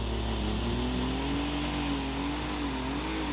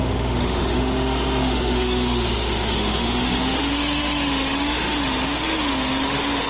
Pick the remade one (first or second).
second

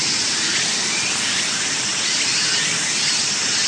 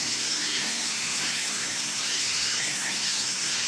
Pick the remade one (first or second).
second